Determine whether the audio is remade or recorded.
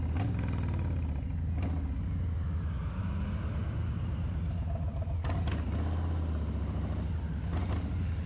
recorded